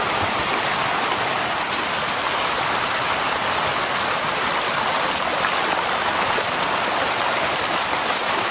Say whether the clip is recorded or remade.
recorded